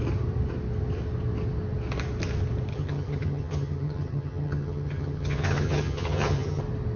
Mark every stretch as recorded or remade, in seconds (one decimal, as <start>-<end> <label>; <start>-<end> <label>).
0.0-2.7 recorded; 2.7-6.6 remade; 6.6-7.0 recorded

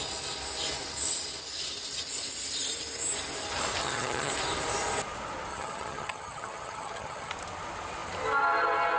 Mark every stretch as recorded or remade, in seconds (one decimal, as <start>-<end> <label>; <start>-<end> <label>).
0.0-3.8 recorded; 3.8-4.3 remade; 4.3-5.5 recorded; 5.5-7.3 remade; 7.3-9.0 recorded

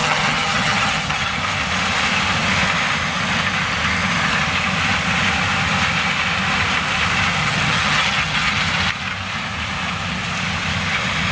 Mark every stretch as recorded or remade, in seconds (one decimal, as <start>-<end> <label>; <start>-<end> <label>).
0.0-1.4 remade; 1.4-7.4 recorded; 7.4-8.6 remade; 8.6-11.3 recorded

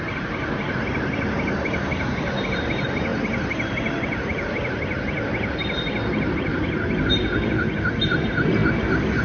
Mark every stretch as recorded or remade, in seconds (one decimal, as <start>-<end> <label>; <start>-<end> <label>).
0.0-9.2 recorded

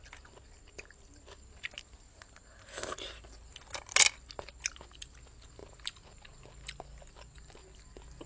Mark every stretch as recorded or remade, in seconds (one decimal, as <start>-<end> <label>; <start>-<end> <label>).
0.0-8.3 recorded

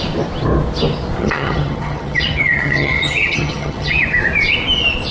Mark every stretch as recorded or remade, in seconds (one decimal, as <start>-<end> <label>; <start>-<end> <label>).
0.0-1.2 recorded; 1.2-4.0 remade; 4.0-5.1 recorded

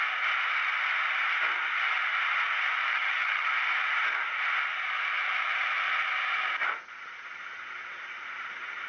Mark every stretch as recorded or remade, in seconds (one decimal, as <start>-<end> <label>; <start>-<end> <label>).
0.0-2.9 recorded; 2.9-3.5 remade; 3.5-8.9 recorded